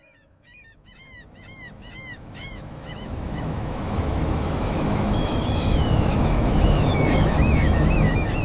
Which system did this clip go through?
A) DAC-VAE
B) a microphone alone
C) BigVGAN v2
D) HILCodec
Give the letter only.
A